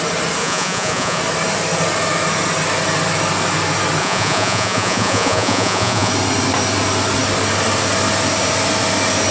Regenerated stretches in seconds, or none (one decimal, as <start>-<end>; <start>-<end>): 0.4-1.2; 4.0-6.1